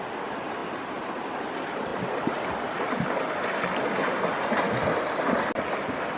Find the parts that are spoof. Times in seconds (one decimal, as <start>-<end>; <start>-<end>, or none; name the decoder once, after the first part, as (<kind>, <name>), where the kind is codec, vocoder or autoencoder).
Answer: none